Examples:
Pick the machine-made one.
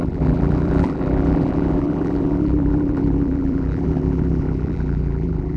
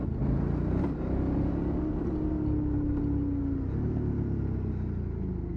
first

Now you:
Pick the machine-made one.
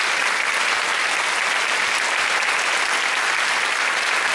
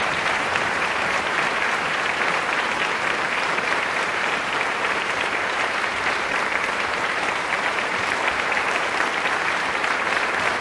second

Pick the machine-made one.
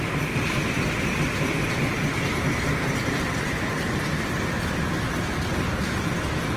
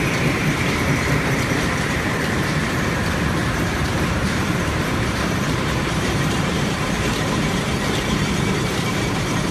second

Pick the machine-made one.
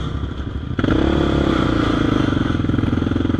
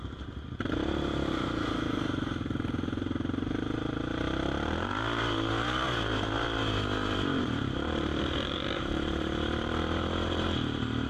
second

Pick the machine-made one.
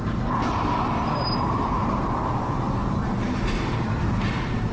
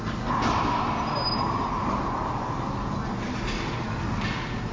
first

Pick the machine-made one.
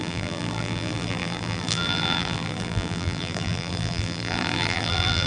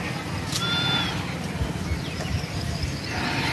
first